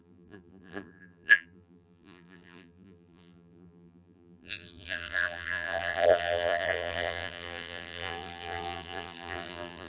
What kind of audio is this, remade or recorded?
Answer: remade